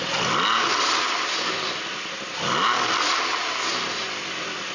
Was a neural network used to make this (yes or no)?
no